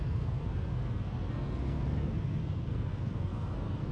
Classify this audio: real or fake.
fake